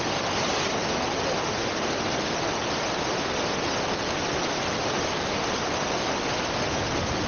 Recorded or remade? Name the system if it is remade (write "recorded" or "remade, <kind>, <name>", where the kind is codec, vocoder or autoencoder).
recorded